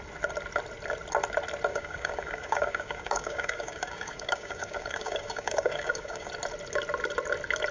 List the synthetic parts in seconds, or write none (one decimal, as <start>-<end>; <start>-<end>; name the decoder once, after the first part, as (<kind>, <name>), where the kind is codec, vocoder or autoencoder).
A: 1.7-6.3 (codec, DAC)